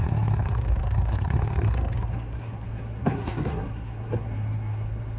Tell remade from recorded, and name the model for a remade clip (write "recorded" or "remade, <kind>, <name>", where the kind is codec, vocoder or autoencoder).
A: remade, codec, SNAC